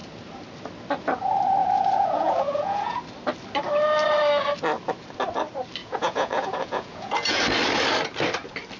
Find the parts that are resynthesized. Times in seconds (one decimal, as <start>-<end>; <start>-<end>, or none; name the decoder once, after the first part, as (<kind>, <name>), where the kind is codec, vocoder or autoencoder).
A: 1.6-3.0 (vocoder, Vocos); 5.8-7.4